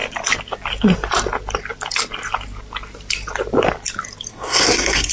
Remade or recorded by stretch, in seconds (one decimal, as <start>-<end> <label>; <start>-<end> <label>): 0.0-4.3 recorded; 4.3-5.1 remade